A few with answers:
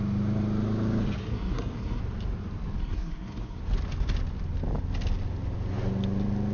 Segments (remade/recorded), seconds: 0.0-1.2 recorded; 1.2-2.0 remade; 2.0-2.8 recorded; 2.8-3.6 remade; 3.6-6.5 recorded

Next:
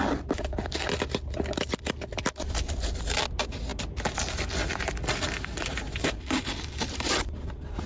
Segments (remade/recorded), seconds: 0.0-7.9 recorded

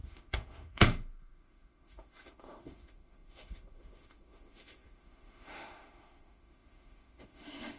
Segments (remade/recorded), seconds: 0.0-7.8 remade

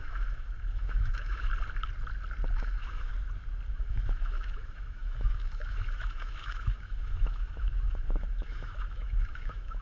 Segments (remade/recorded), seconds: 0.0-1.5 remade; 1.5-2.5 recorded; 2.5-3.1 remade; 3.1-3.7 recorded; 3.7-9.8 remade